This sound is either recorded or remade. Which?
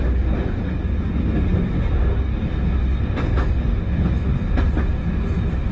recorded